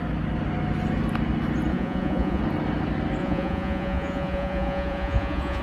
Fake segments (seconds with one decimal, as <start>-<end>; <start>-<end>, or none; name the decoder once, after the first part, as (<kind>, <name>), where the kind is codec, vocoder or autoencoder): 1.7-2.4 (vocoder, Vocos); 3.2-5.6